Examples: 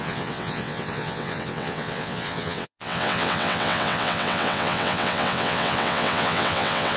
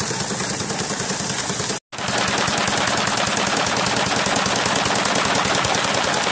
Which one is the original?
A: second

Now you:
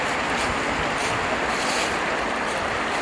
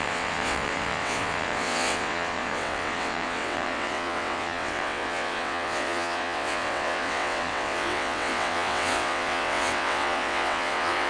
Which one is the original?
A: first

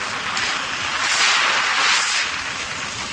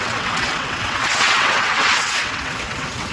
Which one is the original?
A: first